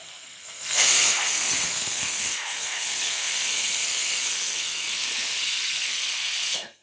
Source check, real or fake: fake